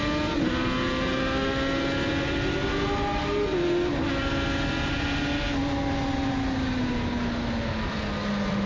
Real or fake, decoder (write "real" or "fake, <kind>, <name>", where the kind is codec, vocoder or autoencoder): real